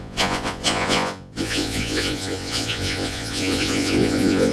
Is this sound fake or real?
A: fake